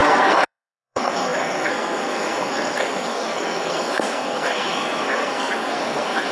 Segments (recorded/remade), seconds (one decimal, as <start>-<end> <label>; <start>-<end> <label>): 0.0-6.3 remade